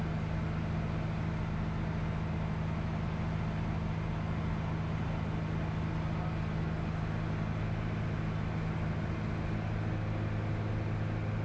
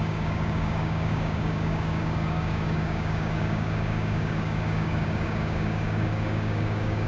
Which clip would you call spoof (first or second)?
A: second